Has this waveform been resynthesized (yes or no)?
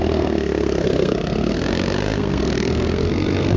yes